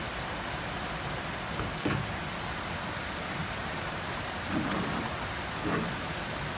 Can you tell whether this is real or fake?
real